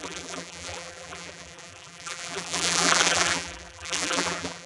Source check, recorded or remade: remade